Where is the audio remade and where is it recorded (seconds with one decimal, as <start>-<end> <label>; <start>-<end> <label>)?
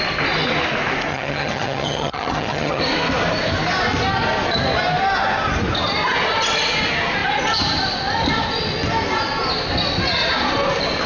0.0-1.1 recorded; 1.1-2.8 remade; 2.8-11.1 recorded